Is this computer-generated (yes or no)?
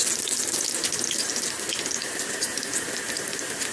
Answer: no